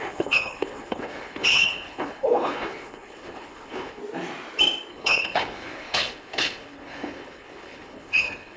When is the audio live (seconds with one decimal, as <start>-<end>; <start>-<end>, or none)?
4.0-4.9